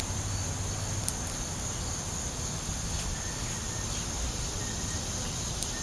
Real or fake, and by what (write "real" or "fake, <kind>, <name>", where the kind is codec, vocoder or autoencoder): real